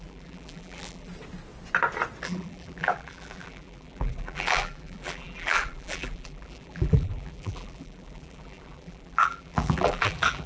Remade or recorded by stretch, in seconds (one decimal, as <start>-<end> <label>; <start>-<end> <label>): 0.0-1.1 remade; 1.1-2.2 recorded; 2.2-10.5 remade